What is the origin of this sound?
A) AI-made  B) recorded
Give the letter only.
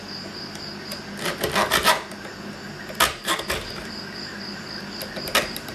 B